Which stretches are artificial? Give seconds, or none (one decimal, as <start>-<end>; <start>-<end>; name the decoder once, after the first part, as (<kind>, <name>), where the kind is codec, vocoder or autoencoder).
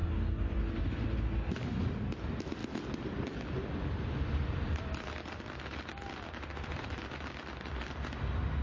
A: none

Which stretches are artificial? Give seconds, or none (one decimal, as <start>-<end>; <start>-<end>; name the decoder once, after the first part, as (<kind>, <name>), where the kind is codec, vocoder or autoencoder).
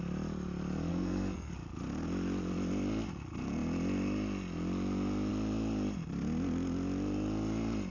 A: 0.9-1.5 (codec, SNAC)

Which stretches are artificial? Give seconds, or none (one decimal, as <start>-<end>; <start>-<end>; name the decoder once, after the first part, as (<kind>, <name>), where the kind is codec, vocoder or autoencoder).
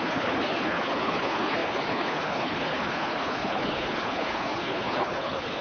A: 0.0-5.6 (codec, HILCodec)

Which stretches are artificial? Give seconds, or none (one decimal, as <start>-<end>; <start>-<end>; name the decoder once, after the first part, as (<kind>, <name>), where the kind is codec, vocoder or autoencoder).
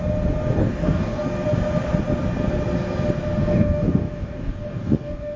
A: 0.6-1.2 (codec, DAC); 3.4-5.4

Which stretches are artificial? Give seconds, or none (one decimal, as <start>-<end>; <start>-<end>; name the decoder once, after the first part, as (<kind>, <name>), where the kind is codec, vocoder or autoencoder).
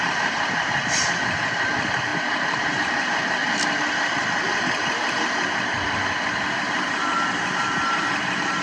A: 0.0-3.4 (vocoder, BigVGAN v2); 6.6-8.6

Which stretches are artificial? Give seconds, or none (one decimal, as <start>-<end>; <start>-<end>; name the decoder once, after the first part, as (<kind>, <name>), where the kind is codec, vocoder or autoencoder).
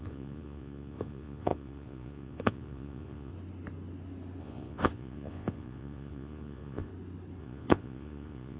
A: 0.0-3.3 (vocoder, Vocos); 4.4-6.9; 7.4-8.6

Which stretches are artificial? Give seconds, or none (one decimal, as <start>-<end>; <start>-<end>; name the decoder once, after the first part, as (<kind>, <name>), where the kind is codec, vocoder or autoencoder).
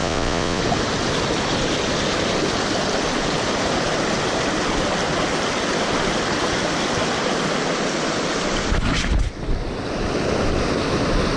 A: 0.0-0.6 (vocoder, Vocos)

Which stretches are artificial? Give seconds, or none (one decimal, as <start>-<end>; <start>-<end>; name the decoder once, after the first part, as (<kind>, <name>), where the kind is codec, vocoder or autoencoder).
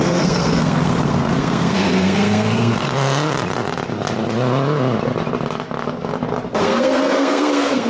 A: 0.0-2.9 (codec, SNAC); 6.6-7.9